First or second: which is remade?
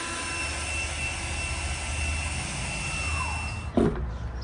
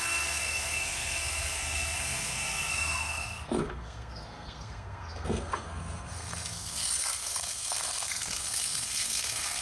second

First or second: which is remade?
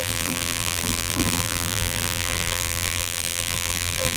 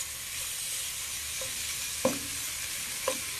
first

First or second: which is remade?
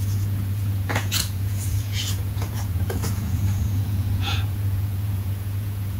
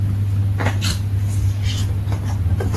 first